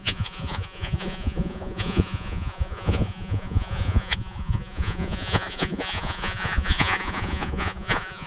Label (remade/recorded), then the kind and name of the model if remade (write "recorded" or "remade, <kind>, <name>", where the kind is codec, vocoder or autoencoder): remade, vocoder, Vocos